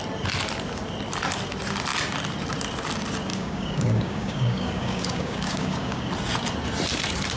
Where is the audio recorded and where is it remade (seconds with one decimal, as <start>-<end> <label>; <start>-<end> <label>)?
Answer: 0.0-3.3 recorded; 3.3-6.1 remade; 6.1-7.4 recorded